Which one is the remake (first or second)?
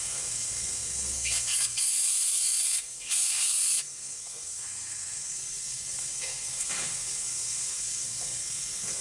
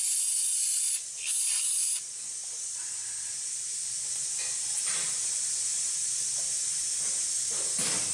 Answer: first